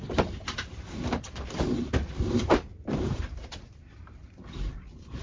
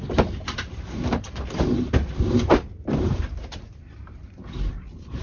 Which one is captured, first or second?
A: second